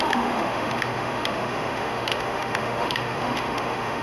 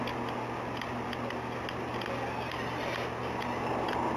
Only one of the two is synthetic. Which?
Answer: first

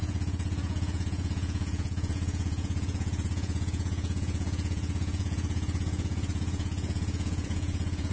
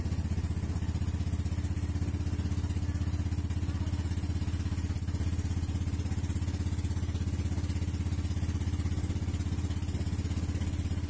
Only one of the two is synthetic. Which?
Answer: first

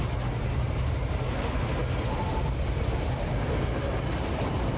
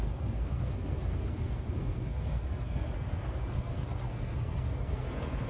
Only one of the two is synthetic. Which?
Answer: second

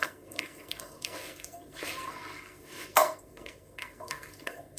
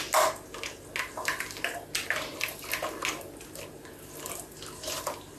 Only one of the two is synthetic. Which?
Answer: first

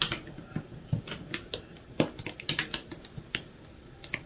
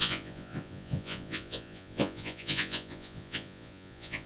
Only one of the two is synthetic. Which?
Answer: second